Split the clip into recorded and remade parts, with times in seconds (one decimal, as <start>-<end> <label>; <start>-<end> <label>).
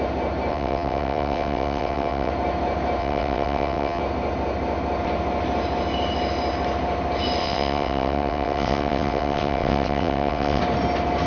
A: 0.0-0.5 recorded; 0.5-2.3 remade; 2.3-3.0 recorded; 3.0-4.0 remade; 4.0-7.4 recorded; 7.4-10.6 remade; 10.6-11.3 recorded